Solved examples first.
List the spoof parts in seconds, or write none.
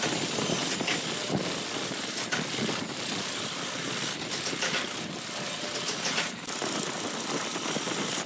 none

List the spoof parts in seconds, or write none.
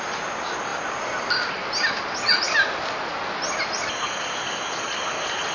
none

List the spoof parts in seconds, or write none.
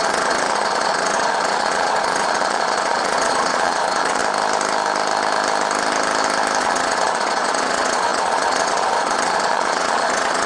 0.0-4.2 (vocoder, Vocos); 6.6-10.5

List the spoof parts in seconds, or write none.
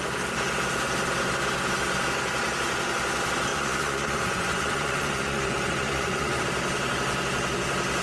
3.5-6.4 (vocoder, Vocos)